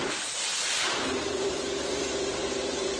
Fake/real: fake